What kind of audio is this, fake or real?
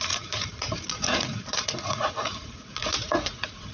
fake